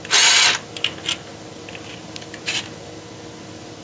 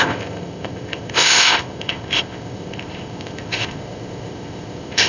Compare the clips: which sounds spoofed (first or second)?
second